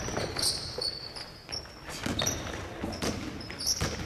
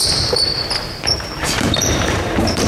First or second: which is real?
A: first